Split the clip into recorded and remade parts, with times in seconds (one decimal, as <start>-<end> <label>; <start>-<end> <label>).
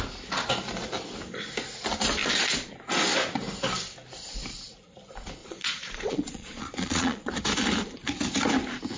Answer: 0.0-5.4 recorded; 5.4-7.3 remade; 7.3-9.0 recorded